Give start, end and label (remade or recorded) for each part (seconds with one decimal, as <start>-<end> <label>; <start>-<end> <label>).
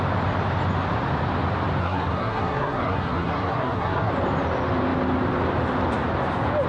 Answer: 0.0-1.8 recorded; 1.8-4.1 remade; 4.1-6.7 recorded